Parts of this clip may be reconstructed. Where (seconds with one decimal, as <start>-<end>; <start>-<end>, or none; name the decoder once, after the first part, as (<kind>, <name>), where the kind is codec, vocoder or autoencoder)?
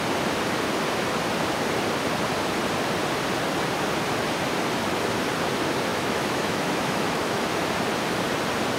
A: 5.9-7.4 (autoencoder, DAC-VAE)